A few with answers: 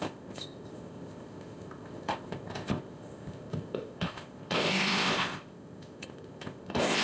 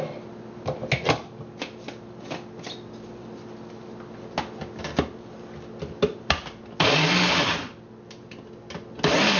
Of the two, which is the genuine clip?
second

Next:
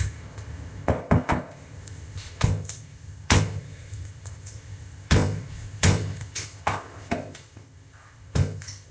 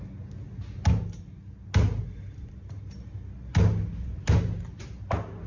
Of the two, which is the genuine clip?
second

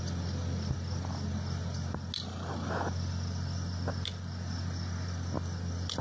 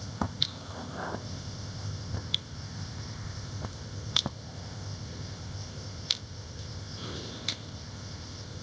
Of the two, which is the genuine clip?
first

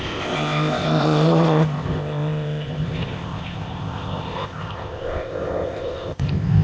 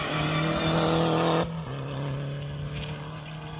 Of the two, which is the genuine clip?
second